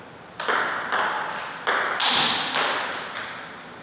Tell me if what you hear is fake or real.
real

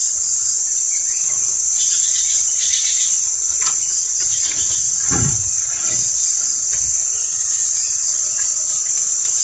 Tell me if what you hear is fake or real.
fake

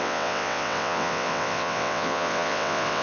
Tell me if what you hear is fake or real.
fake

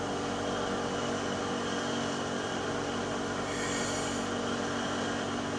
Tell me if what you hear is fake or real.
real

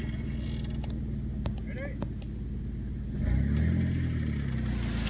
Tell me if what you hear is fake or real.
real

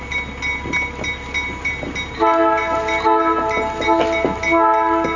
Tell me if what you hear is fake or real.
real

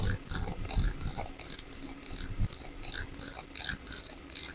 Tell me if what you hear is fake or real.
real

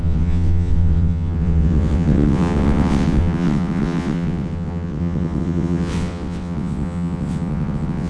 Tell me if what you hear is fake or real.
fake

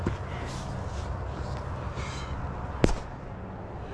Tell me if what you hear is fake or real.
real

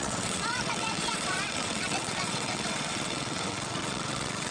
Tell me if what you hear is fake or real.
fake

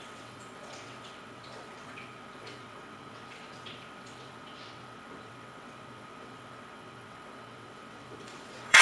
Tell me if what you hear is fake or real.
fake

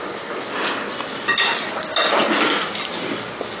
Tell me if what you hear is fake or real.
real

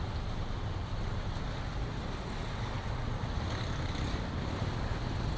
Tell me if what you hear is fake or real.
real